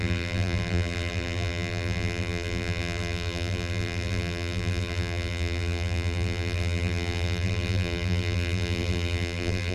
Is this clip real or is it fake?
fake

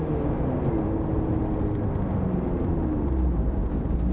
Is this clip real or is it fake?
real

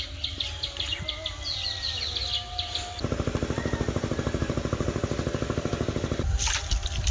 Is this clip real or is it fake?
real